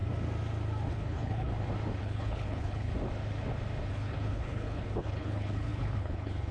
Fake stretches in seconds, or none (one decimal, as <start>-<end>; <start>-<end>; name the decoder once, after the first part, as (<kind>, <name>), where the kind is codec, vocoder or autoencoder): 0.9-1.5 (codec, HILCodec); 2.0-2.9; 3.9-6.5

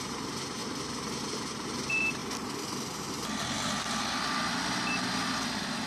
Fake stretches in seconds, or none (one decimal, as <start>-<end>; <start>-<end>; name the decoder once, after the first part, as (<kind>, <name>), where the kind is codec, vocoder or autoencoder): 0.0-2.2 (vocoder, BigVGAN v2)

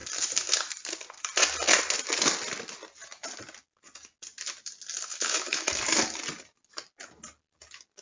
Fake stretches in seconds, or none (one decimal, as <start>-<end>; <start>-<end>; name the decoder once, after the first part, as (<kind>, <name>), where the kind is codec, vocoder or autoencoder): 5.1-5.7 (autoencoder, DAC-VAE)

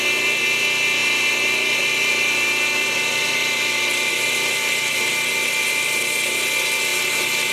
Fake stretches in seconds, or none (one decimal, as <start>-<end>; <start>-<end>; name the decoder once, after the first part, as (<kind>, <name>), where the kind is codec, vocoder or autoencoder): 1.0-5.1 (vocoder, BigVGAN v2)

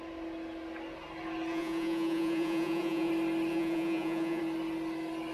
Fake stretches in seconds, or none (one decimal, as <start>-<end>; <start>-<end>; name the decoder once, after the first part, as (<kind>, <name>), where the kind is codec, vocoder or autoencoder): 1.5-3.1 (vocoder, Vocos); 3.5-4.4

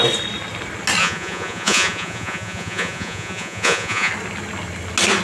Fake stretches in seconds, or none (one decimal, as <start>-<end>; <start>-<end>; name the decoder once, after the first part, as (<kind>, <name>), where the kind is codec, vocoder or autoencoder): 1.0-4.1 (vocoder, Vocos)

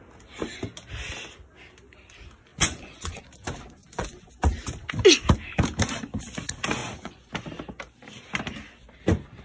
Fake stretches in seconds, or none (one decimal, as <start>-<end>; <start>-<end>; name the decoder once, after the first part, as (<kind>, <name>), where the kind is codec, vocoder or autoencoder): 2.5-3.2 (vocoder, Vocos); 3.8-4.3; 6.8-7.3